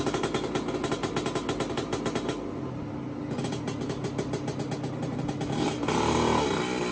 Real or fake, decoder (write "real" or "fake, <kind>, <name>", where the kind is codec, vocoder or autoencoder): real